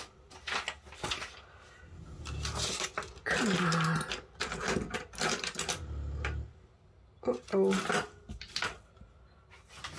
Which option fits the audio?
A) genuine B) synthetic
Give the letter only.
A